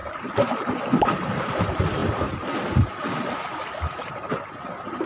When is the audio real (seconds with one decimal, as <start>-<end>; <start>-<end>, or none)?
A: 1.5-5.1